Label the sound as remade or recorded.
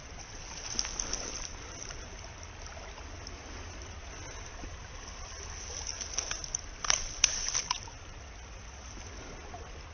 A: recorded